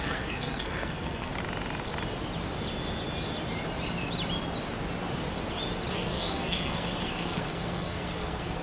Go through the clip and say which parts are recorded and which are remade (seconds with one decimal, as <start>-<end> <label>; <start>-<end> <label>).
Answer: 0.0-1.3 remade; 1.3-5.9 recorded; 5.9-8.6 remade